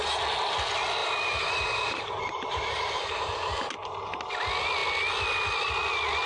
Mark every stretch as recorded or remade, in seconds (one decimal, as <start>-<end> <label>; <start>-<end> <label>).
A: 0.0-1.0 recorded; 1.0-3.3 remade; 3.3-6.3 recorded